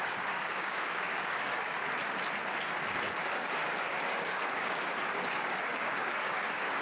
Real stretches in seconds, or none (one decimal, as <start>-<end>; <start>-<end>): 1.8-3.1